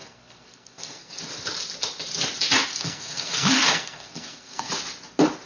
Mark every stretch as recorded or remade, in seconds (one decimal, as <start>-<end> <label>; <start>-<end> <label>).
0.0-1.2 remade; 1.2-2.7 recorded; 2.7-4.7 remade; 4.7-5.5 recorded